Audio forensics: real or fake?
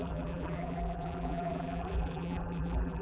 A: fake